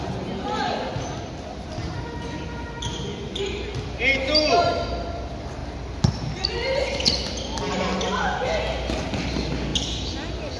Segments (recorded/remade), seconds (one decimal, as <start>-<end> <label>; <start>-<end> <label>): 0.0-10.6 recorded